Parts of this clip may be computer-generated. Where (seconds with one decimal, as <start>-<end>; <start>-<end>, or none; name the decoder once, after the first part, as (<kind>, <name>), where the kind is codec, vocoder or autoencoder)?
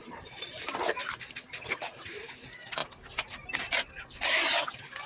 0.0-2.3 (vocoder, BigVGAN v2)